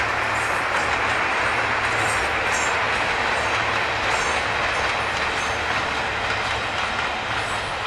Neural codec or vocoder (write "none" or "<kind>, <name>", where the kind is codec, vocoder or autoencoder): none